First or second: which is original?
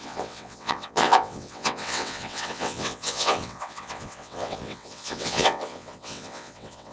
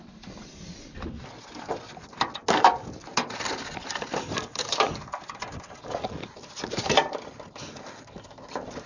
second